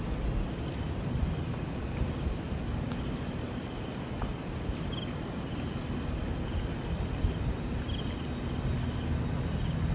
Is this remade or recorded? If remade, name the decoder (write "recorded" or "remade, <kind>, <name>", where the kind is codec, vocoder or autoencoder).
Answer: recorded